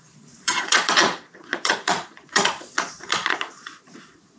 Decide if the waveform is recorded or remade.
remade